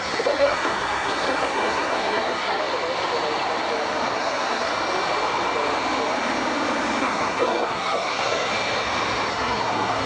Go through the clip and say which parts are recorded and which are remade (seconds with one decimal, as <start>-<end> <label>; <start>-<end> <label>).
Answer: 0.0-2.6 remade; 2.6-4.1 recorded; 4.1-4.7 remade; 4.7-7.0 recorded; 7.0-8.5 remade; 8.5-9.3 recorded; 9.3-10.1 remade